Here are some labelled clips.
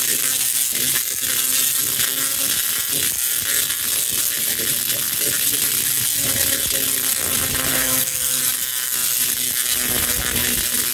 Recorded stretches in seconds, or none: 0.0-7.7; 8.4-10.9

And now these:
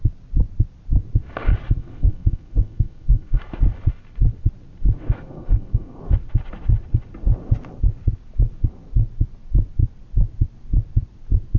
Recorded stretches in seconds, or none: 0.0-1.8; 3.4-5.0; 6.0-11.6

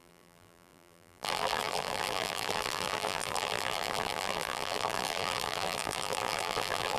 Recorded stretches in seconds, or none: none

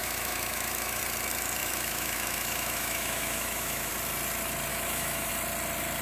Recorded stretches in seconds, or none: 1.0-1.6; 3.9-4.7; 5.3-6.0

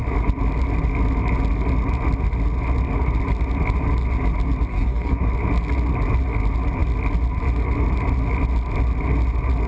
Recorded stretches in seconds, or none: 0.0-4.7; 5.2-9.7